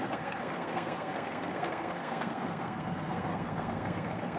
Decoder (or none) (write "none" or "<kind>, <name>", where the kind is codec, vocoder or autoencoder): codec, SNAC